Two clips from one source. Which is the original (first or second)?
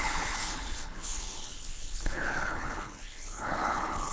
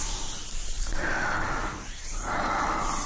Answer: second